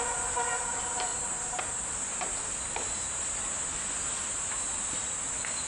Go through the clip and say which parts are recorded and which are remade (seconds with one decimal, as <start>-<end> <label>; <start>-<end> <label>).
0.0-5.7 recorded